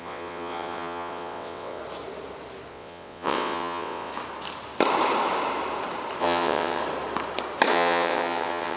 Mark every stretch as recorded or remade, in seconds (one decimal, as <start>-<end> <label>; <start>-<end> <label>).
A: 0.0-1.8 remade; 1.8-2.7 recorded; 2.7-4.1 remade; 4.1-6.2 recorded; 6.2-6.8 remade; 6.8-7.7 recorded; 7.7-8.8 remade